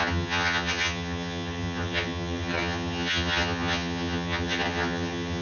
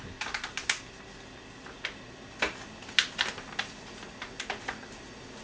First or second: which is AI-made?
first